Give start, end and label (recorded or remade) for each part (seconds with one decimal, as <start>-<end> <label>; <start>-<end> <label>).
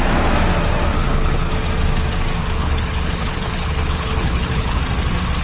0.0-0.9 recorded; 0.9-1.5 remade; 1.5-2.4 recorded; 2.4-4.8 remade; 4.8-5.4 recorded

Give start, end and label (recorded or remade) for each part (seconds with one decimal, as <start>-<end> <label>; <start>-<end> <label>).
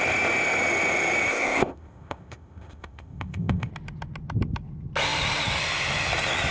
0.0-1.3 recorded; 1.3-3.7 remade; 3.7-6.5 recorded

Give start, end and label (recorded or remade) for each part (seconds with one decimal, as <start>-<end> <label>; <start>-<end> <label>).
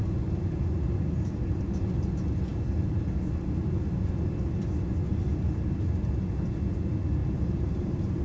0.0-7.2 recorded; 7.2-8.2 remade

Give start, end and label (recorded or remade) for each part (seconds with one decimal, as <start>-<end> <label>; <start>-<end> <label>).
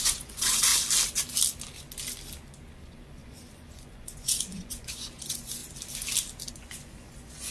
0.0-0.7 remade; 0.7-2.7 recorded; 2.7-5.6 remade; 5.6-6.5 recorded; 6.5-7.5 remade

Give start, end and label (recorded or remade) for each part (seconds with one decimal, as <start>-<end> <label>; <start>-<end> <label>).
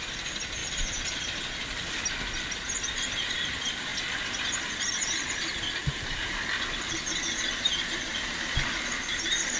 0.0-9.6 remade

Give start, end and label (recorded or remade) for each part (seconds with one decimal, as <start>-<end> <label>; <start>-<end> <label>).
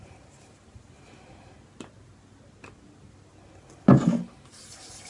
0.0-5.1 recorded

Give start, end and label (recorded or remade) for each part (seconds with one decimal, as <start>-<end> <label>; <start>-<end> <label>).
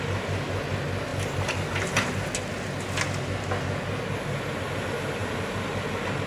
0.0-6.3 recorded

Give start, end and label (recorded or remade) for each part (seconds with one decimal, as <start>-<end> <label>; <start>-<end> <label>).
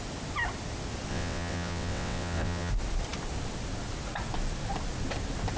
0.0-1.1 recorded; 1.1-2.7 remade; 2.7-5.6 recorded